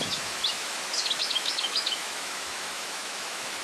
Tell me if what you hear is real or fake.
fake